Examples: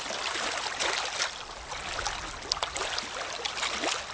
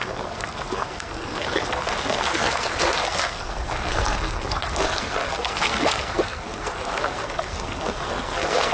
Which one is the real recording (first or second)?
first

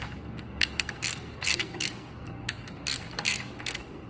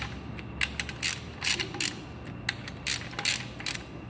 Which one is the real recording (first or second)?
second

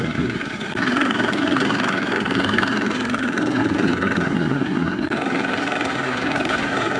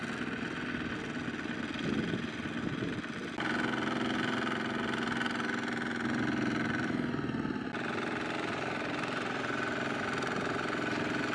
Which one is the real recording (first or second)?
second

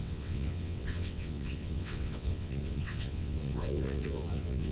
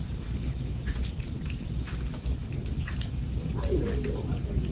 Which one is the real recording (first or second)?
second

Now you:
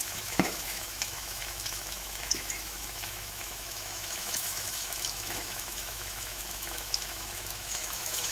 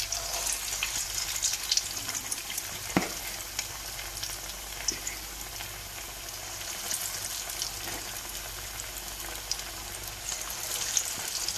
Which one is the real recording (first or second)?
second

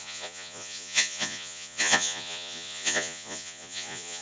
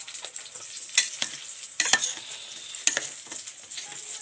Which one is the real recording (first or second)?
second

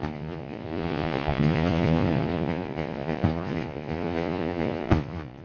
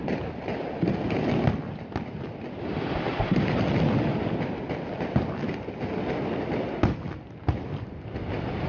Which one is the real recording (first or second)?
second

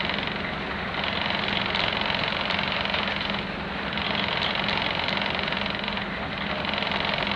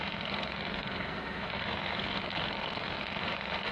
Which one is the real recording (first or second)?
first